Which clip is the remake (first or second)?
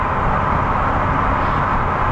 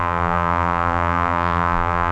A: second